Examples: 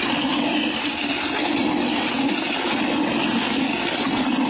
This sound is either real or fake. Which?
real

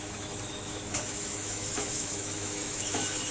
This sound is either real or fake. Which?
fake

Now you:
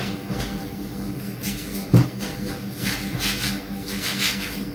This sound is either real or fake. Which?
fake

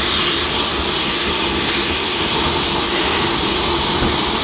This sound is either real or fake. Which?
real